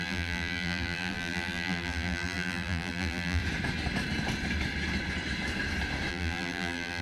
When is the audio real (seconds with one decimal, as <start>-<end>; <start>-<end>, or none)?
3.4-6.1